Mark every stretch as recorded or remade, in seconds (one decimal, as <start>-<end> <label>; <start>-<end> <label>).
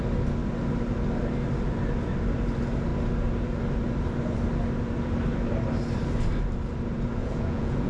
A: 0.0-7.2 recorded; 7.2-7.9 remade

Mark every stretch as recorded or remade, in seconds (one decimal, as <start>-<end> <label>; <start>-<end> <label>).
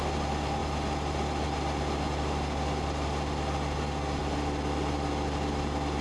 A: 0.0-6.0 recorded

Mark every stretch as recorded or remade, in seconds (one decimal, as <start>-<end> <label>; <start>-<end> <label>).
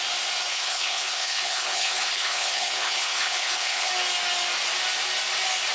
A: 0.0-0.5 recorded; 0.5-3.9 remade; 3.9-5.7 recorded